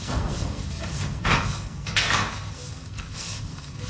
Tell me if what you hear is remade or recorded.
remade